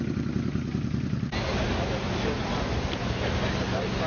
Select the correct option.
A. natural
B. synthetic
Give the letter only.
A